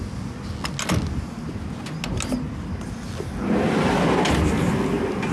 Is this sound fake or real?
real